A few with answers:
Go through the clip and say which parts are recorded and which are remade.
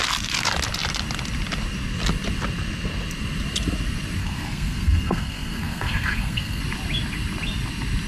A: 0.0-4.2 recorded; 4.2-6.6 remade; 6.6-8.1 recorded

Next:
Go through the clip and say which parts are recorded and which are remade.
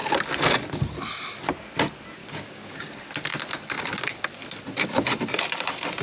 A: 0.0-2.2 recorded; 2.2-2.9 remade; 2.9-6.0 recorded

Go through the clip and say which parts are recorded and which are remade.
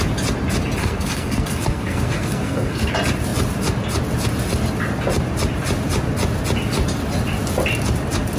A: 0.0-0.8 recorded; 0.8-2.9 remade; 2.9-8.4 recorded